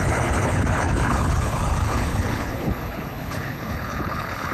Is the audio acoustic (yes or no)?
no